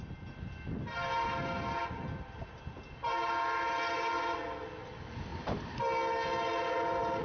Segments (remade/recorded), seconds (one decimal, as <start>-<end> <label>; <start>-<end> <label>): 0.0-5.3 recorded; 5.3-5.8 remade; 5.8-7.2 recorded